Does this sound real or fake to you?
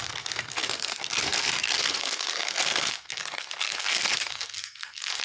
fake